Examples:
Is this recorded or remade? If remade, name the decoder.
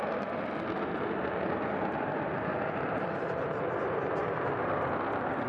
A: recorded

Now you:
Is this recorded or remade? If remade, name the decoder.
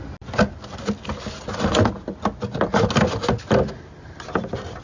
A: recorded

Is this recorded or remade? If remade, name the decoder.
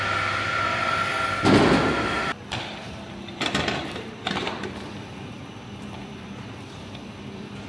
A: remade, vocoder, BigVGAN v2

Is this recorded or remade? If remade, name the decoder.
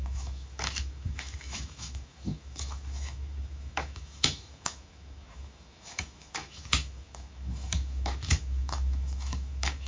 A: remade, autoencoder, DAC-VAE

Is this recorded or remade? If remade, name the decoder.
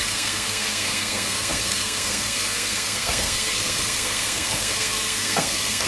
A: remade, codec, SNAC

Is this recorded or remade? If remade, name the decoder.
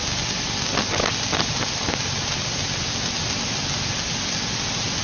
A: recorded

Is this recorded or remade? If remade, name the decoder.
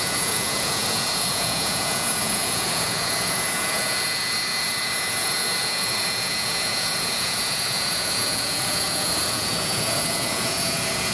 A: remade, vocoder, Vocos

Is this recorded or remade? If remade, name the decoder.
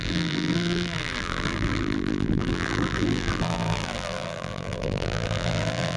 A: remade, vocoder, BigVGAN v2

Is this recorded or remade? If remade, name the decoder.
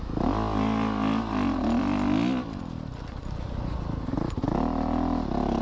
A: recorded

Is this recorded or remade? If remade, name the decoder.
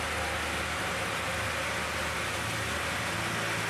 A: recorded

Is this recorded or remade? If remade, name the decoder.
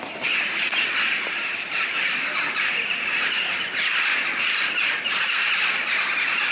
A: recorded